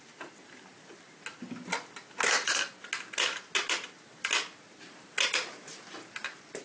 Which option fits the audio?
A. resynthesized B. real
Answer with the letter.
B